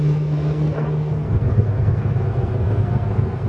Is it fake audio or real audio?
fake